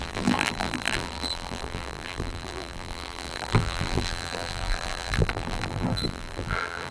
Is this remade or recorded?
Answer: remade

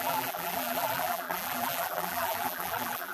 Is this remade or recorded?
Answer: remade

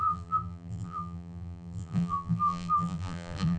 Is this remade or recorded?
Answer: remade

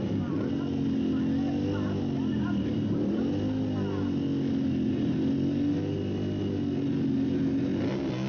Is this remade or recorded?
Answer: recorded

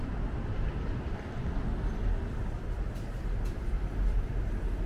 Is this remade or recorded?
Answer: remade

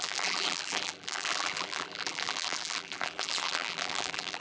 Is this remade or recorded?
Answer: remade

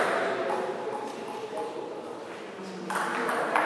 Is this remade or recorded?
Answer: recorded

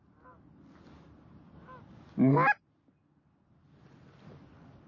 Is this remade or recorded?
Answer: recorded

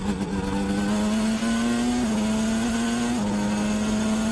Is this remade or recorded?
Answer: recorded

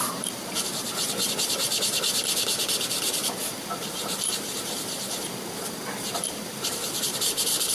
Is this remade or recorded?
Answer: remade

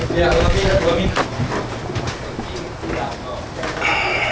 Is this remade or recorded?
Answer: recorded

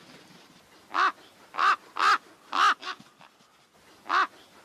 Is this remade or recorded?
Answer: recorded